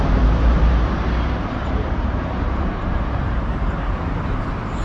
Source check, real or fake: fake